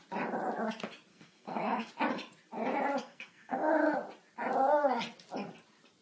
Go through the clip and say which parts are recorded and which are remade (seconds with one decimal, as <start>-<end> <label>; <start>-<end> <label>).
0.0-1.1 recorded; 1.1-1.9 remade; 1.9-3.0 recorded; 3.0-3.7 remade; 3.7-6.0 recorded